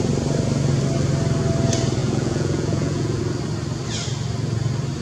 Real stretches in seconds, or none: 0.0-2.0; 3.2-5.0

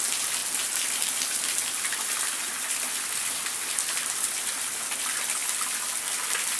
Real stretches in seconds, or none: 0.0-6.6

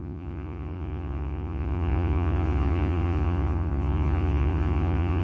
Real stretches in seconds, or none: none

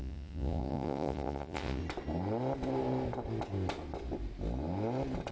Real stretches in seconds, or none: 1.8-5.3